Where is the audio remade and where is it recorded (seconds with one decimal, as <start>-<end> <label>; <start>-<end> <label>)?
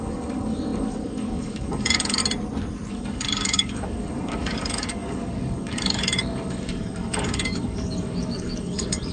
0.0-2.2 remade; 2.2-2.9 recorded; 2.9-9.1 remade